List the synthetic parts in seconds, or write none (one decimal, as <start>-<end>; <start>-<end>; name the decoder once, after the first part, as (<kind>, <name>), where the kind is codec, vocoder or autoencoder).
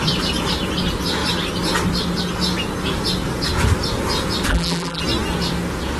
4.5-5.0 (vocoder, BigVGAN v2)